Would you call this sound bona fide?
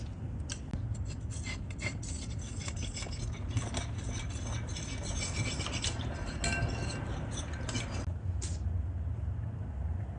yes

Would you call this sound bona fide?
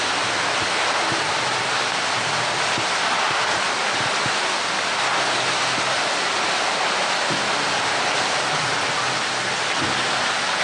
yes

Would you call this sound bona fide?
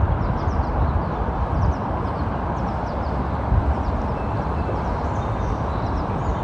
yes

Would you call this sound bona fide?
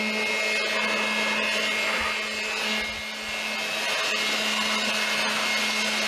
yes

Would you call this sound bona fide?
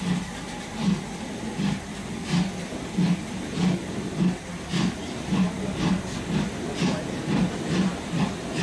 yes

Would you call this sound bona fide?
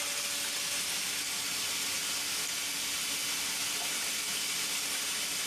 yes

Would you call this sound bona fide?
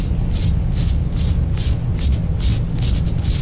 yes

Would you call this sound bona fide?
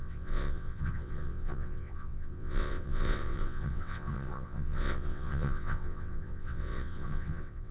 no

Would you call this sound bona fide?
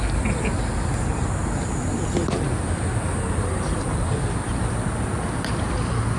yes